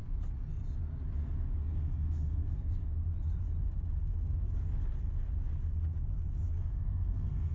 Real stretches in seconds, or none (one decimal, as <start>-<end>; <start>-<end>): 0.0-1.7; 3.0-6.6